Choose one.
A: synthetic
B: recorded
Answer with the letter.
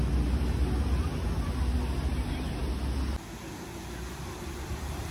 B